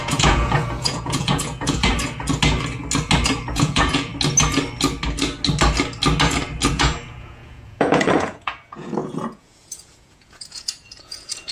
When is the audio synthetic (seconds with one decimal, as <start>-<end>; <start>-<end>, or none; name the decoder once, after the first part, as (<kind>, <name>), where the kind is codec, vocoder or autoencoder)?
0.0-1.9 (vocoder, Vocos); 3.5-4.1; 6.7-11.5